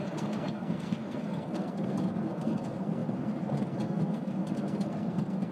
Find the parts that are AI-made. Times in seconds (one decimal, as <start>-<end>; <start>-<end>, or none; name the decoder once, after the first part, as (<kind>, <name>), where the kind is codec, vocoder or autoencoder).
0.0-5.5 (codec, SNAC)